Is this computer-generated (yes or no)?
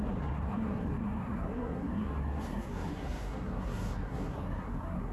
yes